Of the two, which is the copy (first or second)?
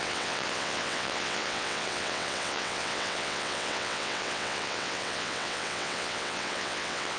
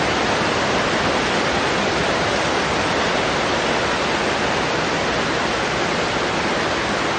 first